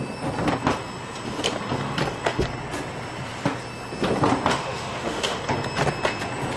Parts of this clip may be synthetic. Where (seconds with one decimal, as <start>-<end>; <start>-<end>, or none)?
4.5-5.4